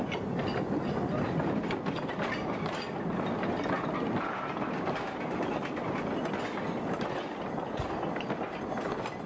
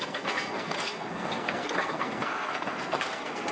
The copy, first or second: second